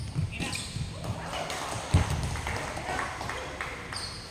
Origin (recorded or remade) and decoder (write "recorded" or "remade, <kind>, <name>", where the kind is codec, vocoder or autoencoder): recorded